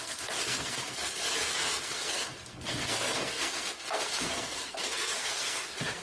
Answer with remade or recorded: remade